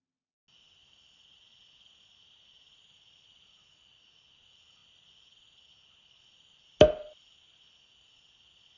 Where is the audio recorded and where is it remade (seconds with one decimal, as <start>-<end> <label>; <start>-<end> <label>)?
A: 0.0-8.8 recorded